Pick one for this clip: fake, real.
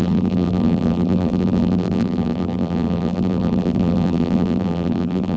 fake